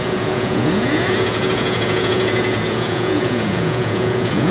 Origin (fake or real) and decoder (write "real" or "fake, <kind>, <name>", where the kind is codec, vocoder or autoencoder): fake, vocoder, Vocos